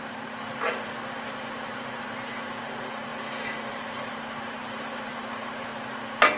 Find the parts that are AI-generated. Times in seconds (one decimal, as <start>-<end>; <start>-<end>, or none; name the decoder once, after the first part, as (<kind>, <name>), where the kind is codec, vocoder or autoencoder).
0.0-3.1 (vocoder, BigVGAN v2); 3.7-5.7